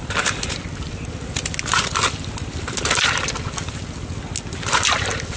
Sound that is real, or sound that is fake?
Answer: real